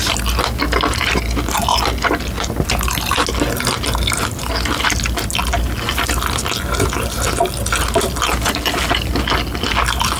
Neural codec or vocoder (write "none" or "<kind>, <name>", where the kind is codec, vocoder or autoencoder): none